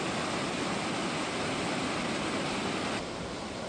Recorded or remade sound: recorded